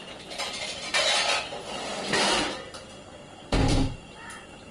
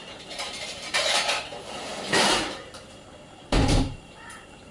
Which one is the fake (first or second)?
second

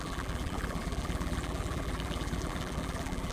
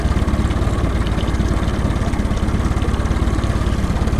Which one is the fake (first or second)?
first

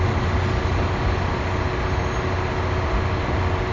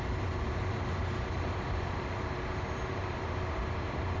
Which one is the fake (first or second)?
second